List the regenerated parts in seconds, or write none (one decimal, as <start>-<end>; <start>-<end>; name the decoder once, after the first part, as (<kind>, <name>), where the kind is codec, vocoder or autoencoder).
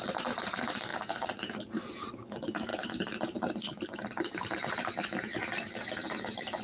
none